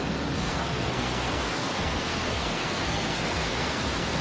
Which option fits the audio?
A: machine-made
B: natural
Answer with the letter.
A